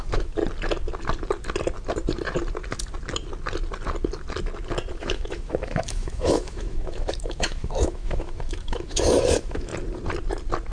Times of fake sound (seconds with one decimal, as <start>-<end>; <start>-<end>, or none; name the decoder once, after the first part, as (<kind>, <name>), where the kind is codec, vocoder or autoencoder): 0.0-0.4 (autoencoder, DAC-VAE); 4.9-9.7